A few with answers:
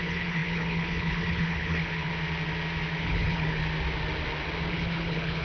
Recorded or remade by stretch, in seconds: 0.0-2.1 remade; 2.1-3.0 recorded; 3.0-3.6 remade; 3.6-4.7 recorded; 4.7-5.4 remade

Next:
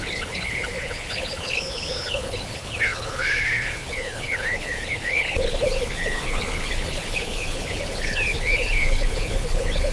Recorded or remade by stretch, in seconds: 0.0-9.9 remade

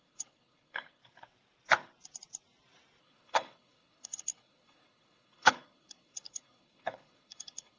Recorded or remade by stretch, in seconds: 0.0-1.0 remade; 1.0-3.0 recorded; 3.0-7.8 remade